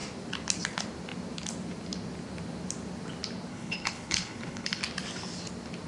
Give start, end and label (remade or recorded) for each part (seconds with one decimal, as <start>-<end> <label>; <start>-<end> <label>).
0.0-3.5 recorded; 3.5-4.8 remade; 4.8-5.9 recorded